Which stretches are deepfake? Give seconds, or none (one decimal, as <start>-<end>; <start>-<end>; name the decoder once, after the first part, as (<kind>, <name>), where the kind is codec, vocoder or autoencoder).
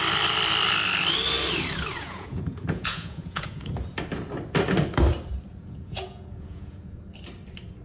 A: 1.9-3.7 (vocoder, Vocos); 5.5-7.0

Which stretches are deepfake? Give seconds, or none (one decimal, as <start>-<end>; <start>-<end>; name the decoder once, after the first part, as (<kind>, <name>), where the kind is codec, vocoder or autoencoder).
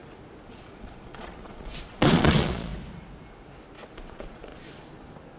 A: 0.5-2.7 (vocoder, Vocos); 4.0-4.5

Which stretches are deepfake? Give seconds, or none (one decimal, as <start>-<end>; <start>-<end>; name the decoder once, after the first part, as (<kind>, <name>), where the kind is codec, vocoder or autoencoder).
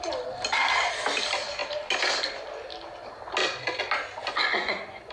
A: 4.2-5.1 (vocoder, Vocos)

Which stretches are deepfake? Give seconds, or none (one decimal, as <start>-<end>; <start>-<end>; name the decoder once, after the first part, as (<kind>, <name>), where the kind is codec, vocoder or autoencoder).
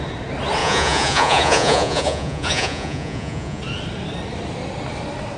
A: 0.6-3.6 (vocoder, Vocos)